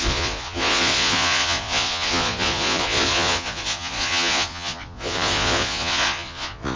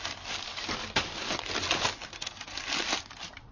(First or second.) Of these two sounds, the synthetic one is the first